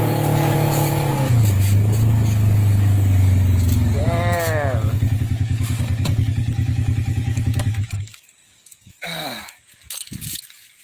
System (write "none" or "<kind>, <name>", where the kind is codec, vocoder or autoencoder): codec, DAC